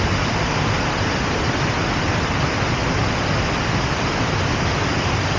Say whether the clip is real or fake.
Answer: real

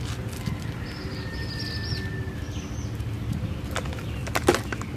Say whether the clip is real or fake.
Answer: real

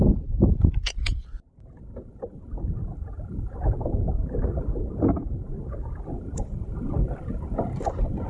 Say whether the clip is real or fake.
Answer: real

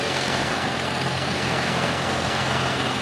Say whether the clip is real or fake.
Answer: fake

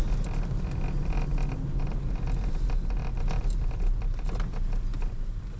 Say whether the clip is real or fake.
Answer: real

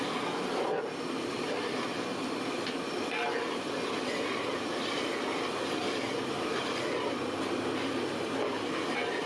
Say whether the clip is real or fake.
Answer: real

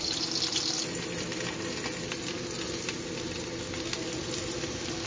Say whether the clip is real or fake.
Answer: real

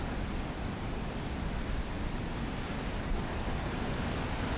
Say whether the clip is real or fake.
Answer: real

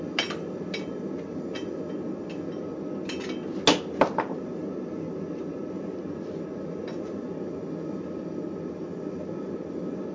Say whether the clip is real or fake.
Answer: real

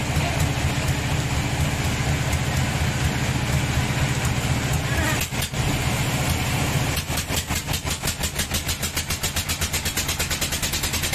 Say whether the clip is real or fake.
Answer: real